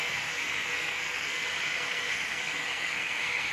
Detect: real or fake fake